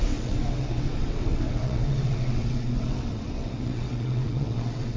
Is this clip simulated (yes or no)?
yes